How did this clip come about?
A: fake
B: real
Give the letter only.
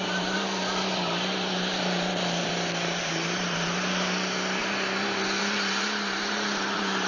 A